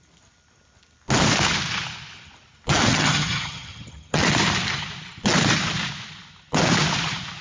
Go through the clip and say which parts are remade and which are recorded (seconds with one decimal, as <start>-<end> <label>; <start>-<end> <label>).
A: 0.0-2.9 recorded; 2.9-4.2 remade; 4.2-7.4 recorded